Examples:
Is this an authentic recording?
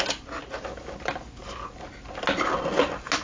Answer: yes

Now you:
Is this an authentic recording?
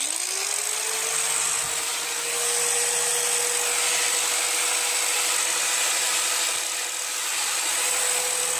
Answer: yes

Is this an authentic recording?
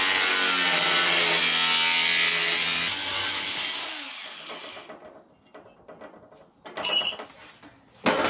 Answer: yes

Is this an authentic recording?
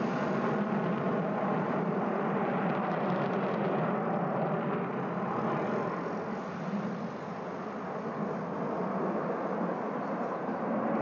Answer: yes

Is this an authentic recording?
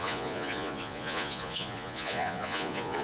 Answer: no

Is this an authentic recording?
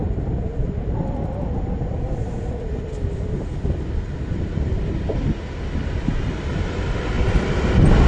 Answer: yes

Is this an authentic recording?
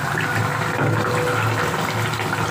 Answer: yes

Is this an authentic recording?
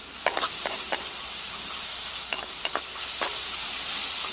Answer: no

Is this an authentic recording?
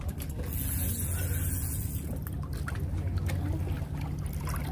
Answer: yes